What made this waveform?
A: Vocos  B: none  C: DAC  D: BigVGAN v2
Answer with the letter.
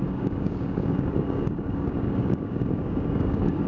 C